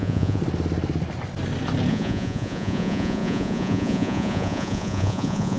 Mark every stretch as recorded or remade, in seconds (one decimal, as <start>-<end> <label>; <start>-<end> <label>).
0.0-0.4 remade; 0.4-1.9 recorded; 1.9-5.6 remade